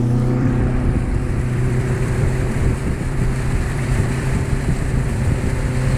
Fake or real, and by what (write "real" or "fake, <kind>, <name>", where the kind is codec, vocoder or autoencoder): fake, vocoder, BigVGAN v2